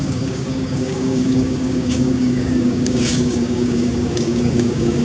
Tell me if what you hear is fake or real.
fake